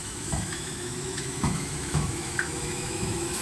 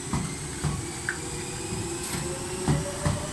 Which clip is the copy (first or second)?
first